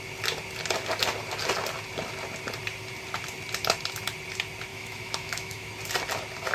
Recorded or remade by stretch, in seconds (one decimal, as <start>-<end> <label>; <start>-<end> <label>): 0.0-4.7 recorded; 4.7-5.7 remade; 5.7-6.5 recorded